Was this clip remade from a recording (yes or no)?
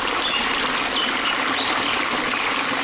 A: no